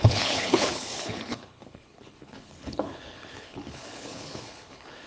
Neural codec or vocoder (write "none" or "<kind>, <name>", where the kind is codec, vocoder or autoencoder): codec, HILCodec